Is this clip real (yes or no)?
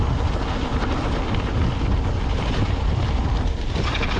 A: yes